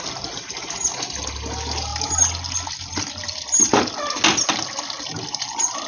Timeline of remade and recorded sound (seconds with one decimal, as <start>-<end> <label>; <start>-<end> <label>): 0.0-5.9 recorded